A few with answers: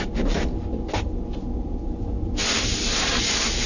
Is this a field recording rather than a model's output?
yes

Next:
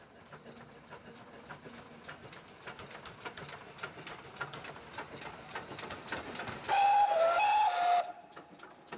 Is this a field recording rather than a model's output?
yes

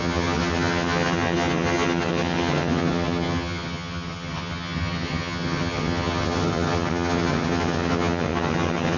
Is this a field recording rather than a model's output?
no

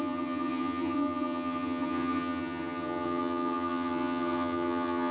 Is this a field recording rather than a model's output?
no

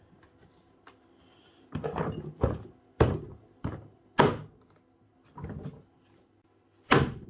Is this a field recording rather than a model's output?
yes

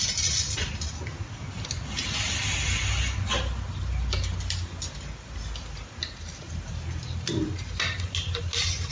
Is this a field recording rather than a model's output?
yes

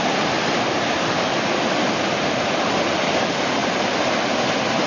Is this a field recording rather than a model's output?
yes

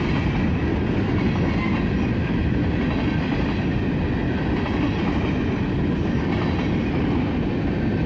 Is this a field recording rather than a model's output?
yes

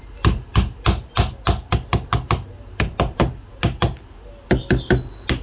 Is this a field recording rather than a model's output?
yes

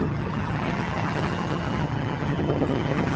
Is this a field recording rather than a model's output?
no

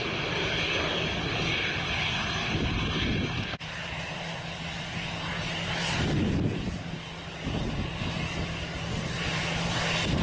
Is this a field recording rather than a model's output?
yes